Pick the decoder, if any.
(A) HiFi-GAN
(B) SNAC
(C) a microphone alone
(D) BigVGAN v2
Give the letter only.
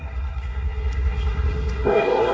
B